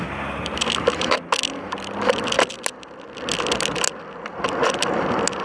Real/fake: real